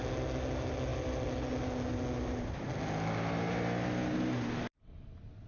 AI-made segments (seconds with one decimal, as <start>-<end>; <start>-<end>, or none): none